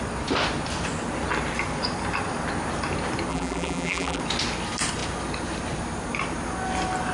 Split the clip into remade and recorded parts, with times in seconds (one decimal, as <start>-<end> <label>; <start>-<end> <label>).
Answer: 0.0-3.3 recorded; 3.3-4.2 remade; 4.2-7.1 recorded